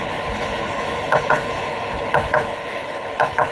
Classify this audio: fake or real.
fake